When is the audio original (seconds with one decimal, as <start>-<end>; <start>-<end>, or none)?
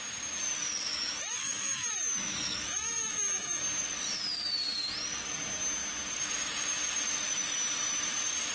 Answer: 0.0-0.9; 3.6-8.5